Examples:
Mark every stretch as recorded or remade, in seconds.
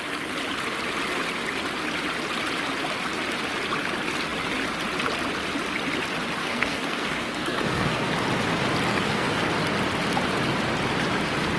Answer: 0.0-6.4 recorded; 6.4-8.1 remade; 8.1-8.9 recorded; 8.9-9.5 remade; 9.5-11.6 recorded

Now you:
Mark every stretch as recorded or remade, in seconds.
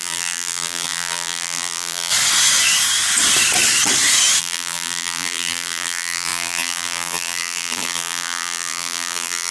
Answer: 0.0-2.1 remade; 2.1-4.4 recorded; 4.4-9.5 remade